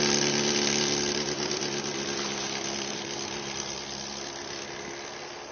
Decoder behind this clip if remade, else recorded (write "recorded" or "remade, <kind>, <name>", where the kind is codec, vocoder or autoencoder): recorded